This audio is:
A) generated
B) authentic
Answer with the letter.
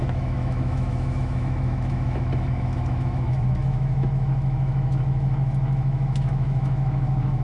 A